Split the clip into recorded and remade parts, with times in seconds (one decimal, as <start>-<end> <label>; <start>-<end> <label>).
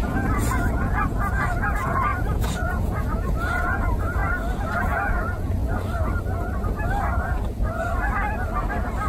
0.0-4.2 remade; 4.2-4.8 recorded; 4.8-5.6 remade; 5.6-9.1 recorded